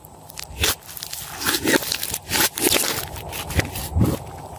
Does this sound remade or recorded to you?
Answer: recorded